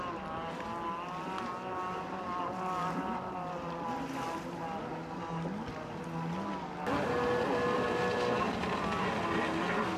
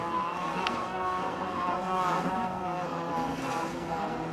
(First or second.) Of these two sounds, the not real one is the second